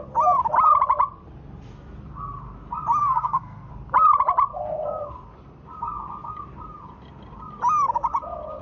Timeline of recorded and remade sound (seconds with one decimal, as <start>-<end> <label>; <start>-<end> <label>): 0.0-3.0 recorded; 3.0-3.7 remade; 3.7-8.6 recorded